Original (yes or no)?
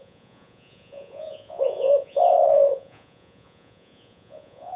no